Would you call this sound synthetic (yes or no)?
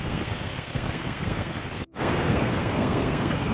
yes